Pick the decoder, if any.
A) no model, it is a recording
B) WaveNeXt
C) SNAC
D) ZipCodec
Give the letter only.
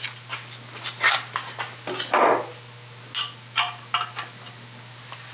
A